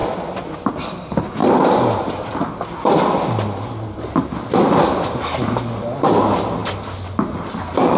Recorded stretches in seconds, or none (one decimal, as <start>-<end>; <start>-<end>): 0.0-8.0